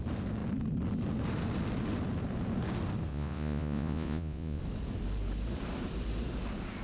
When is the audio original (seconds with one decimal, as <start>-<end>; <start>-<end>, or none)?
0.0-3.1; 4.6-6.8